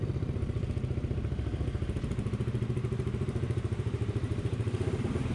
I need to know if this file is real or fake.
fake